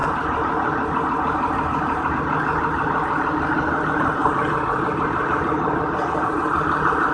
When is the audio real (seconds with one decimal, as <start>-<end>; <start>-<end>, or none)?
0.0-7.1